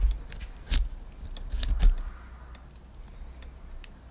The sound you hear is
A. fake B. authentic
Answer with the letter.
B